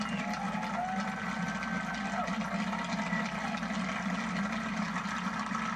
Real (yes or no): yes